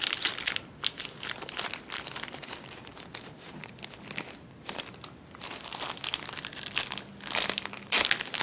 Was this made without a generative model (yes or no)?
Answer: yes